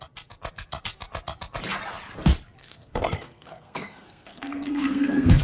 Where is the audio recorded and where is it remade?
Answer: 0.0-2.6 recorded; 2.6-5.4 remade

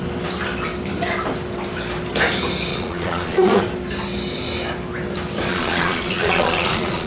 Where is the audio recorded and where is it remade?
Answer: 0.0-2.7 recorded; 2.7-3.6 remade; 3.6-5.5 recorded; 5.5-7.1 remade

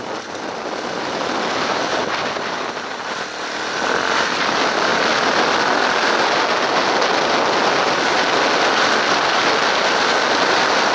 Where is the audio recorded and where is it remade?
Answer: 0.0-10.9 recorded

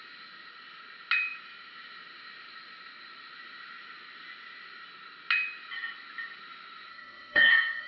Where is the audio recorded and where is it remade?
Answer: 0.0-6.9 recorded; 6.9-7.9 remade